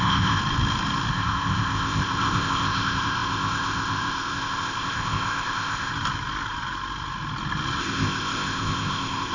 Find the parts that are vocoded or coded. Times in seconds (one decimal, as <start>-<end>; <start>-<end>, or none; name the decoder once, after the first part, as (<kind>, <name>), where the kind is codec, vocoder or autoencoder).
0.0-0.4 (codec, ZipCodec); 1.1-5.9; 7.8-9.3